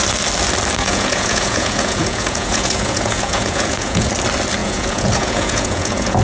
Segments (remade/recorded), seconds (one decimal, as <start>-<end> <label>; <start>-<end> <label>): 0.0-0.8 recorded; 0.8-4.1 remade; 4.1-4.6 recorded; 4.6-6.2 remade